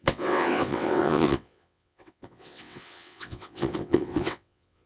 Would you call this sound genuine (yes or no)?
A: no